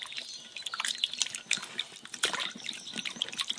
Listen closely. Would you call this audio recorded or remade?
recorded